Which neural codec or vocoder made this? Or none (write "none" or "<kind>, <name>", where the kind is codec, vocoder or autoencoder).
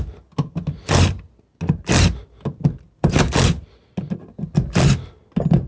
none